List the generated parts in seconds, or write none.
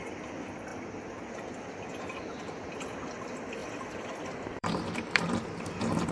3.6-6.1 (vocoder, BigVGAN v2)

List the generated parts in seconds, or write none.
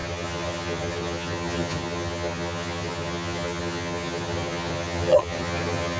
0.0-6.0 (vocoder, HiFi-GAN)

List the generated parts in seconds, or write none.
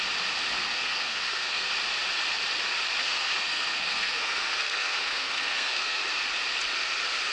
0.6-1.7 (codec, SNAC); 3.0-6.0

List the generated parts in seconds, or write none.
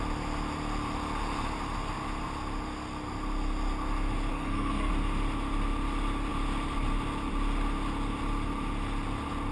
4.3-4.9 (codec, SNAC)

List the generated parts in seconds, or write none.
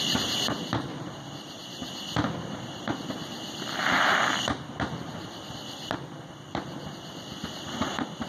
none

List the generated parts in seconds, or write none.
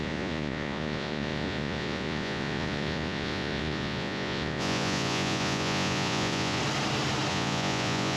0.0-6.6 (vocoder, Vocos); 7.3-8.2